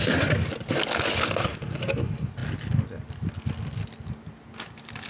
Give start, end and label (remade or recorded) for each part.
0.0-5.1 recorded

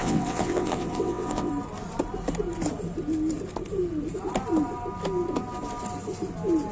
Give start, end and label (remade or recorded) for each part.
0.0-1.5 remade; 1.5-6.7 recorded